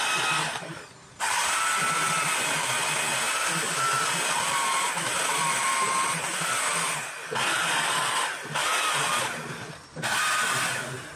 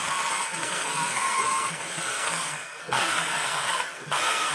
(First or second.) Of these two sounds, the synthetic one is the second